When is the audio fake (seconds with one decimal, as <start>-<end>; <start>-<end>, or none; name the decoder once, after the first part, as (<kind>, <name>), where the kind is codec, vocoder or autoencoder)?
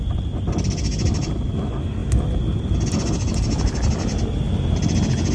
none